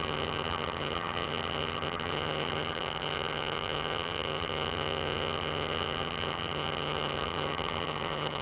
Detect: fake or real fake